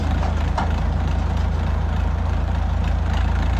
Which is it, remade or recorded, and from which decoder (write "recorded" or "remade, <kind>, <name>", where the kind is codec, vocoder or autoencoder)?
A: remade, vocoder, BigVGAN v2